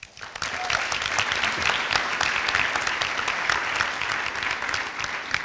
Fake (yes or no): no